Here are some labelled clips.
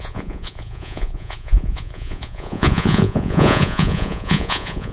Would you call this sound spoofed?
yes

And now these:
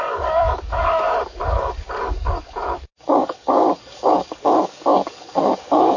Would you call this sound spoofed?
yes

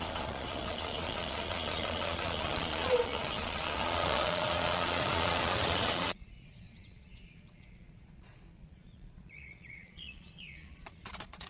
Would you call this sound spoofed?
yes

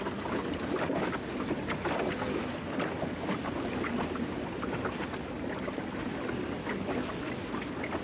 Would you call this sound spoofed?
no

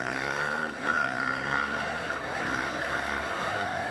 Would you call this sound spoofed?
yes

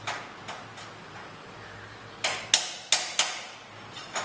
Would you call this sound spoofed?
no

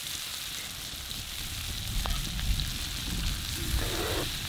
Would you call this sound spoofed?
no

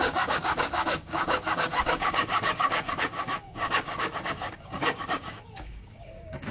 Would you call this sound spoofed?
yes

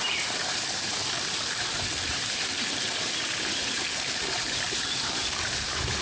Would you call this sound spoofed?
yes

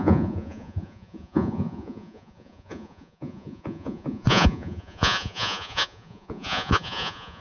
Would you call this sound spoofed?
yes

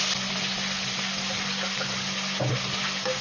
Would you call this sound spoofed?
no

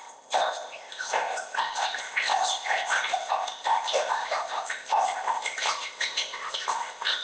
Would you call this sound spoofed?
yes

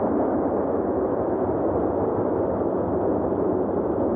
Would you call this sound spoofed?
no